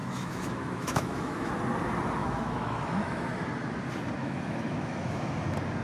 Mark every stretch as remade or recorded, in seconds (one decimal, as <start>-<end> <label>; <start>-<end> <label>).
0.0-1.5 remade; 1.5-2.2 recorded; 2.2-3.2 remade; 3.2-4.2 recorded; 4.2-5.3 remade; 5.3-5.8 recorded